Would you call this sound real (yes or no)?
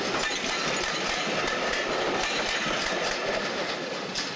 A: yes